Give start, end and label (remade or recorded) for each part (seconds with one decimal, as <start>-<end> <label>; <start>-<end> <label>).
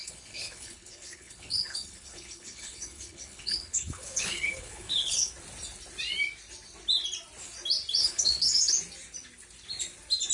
0.0-5.3 remade; 5.3-8.0 recorded; 8.0-8.7 remade; 8.7-10.3 recorded